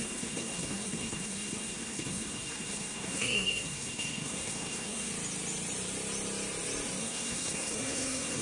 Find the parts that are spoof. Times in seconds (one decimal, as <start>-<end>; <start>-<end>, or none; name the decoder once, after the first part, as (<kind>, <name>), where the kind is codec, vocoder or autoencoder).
0.0-5.1 (codec, SNAC); 7.0-8.4

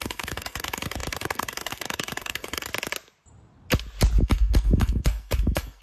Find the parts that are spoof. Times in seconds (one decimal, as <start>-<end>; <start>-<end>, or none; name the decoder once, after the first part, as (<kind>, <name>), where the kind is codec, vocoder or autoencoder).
0.0-2.7 (codec, SNAC); 4.2-5.8

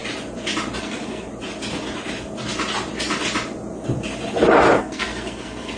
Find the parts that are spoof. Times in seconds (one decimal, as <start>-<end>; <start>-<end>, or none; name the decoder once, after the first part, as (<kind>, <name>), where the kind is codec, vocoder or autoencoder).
0.8-1.3 (codec, SNAC); 4.8-5.8

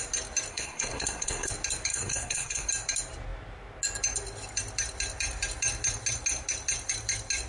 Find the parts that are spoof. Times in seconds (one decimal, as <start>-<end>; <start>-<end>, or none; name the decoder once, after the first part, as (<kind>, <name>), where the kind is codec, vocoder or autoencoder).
0.5-1.5 (codec, SNAC); 1.9-2.7

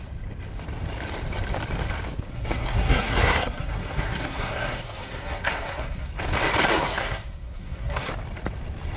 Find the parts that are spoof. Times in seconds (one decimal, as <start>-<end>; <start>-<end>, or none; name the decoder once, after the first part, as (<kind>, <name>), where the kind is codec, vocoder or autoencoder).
2.3-6.1 (codec, SNAC); 6.7-8.1

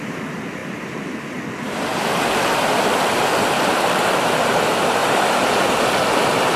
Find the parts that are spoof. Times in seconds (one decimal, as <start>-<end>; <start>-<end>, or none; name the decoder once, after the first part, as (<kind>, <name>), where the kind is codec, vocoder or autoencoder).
none

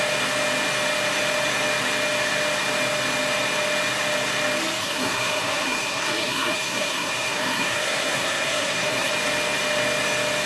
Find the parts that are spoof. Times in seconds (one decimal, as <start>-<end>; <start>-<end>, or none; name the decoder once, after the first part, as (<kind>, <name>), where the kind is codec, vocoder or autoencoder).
4.8-9.1 (codec, SNAC)